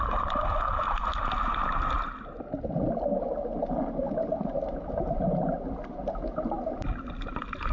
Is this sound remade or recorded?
recorded